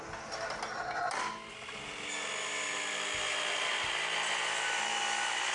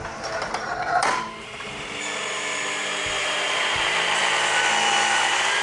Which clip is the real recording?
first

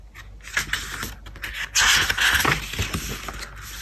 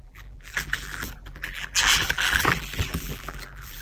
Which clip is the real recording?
first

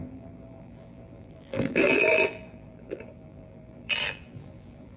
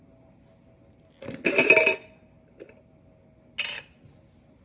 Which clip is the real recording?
second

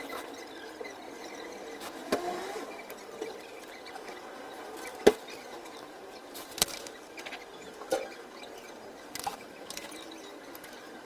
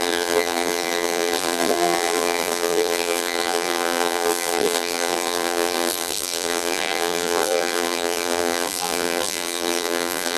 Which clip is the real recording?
first